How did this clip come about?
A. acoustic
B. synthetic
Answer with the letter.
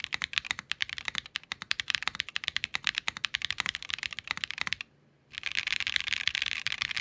B